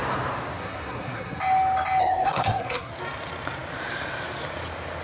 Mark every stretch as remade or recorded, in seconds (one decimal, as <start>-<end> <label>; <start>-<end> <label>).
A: 0.0-0.6 recorded; 0.6-1.4 remade; 1.4-2.0 recorded; 2.0-2.9 remade; 2.9-5.0 recorded